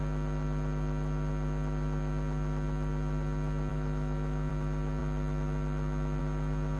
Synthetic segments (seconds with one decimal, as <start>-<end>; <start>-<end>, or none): 3.7-4.5